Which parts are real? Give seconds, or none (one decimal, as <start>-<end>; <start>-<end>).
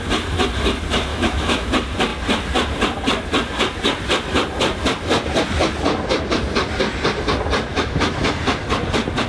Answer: 0.0-1.1; 1.7-7.7; 8.4-9.3